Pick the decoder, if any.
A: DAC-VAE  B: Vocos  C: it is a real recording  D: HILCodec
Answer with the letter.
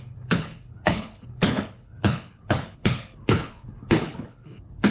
D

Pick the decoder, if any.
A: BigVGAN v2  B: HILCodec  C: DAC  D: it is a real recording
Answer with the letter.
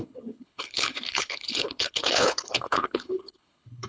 B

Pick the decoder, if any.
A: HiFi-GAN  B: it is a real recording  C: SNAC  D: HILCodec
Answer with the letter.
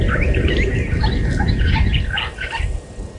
B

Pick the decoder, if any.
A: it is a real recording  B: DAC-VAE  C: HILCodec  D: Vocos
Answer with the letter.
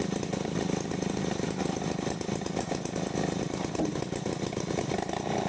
A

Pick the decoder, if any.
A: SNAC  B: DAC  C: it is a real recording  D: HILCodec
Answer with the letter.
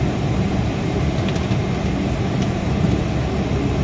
C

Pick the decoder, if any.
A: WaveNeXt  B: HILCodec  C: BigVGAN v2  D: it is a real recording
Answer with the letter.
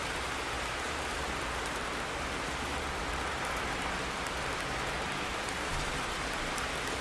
D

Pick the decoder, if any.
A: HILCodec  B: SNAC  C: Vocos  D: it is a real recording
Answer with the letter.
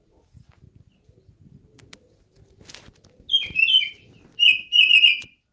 D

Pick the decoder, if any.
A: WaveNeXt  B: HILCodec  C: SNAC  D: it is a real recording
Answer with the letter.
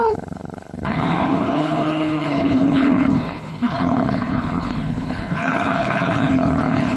B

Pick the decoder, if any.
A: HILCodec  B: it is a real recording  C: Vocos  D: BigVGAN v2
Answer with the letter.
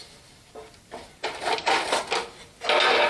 B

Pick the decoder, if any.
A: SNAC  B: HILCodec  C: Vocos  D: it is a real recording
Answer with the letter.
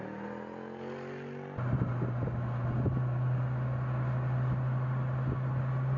D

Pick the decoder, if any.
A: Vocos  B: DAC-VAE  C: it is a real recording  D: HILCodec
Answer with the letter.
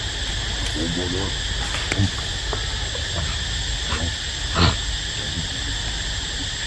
C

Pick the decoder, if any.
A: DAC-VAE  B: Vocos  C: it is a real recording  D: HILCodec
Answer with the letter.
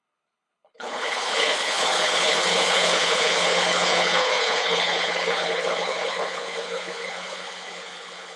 D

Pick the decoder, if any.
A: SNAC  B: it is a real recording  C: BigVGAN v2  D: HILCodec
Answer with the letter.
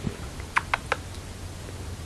B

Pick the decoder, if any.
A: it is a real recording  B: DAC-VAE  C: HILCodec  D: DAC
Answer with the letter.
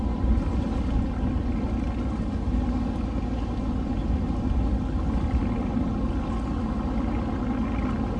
A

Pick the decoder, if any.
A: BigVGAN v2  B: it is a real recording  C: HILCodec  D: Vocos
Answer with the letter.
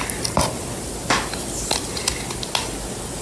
B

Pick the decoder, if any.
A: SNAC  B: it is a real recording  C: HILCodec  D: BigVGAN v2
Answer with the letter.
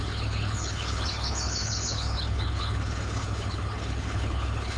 C